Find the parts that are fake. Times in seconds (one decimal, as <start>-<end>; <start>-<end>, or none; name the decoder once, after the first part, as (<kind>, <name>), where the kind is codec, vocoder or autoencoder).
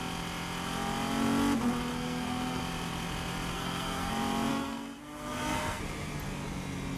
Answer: 1.9-2.6 (codec, SNAC); 3.5-4.1; 4.5-5.8